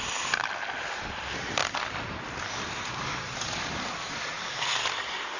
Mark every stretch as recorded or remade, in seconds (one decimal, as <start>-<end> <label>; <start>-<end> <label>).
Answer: 0.0-5.4 recorded